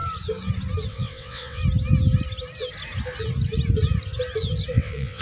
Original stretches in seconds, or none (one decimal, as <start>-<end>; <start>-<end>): 0.0-0.9; 1.6-4.7